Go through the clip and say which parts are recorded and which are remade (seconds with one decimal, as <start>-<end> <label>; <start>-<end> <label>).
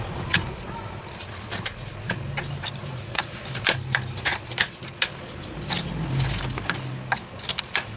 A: 0.0-2.8 recorded; 2.8-3.4 remade; 3.4-8.0 recorded